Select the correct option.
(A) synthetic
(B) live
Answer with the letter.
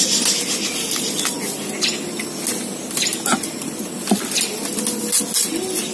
B